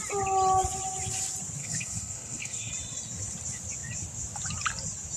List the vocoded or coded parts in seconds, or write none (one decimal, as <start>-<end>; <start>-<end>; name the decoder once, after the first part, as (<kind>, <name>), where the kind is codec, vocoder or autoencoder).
1.6-2.7 (codec, SNAC)